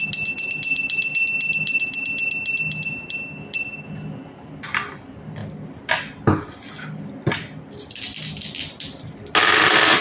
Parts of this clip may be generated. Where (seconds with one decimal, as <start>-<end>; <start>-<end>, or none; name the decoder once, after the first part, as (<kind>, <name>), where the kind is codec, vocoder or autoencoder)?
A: none